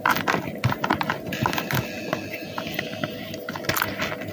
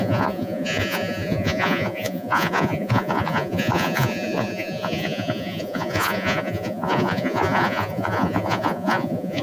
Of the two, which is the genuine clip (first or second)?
first